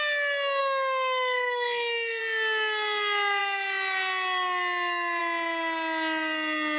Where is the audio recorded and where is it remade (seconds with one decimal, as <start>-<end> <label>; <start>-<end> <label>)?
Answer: 0.0-0.6 recorded; 0.6-2.2 remade; 2.2-6.8 recorded